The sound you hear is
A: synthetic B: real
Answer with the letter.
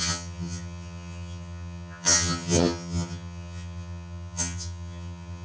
A